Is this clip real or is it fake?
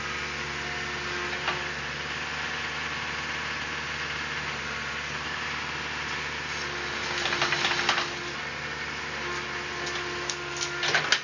real